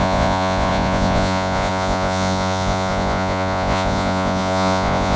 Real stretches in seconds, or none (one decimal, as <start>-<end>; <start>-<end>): none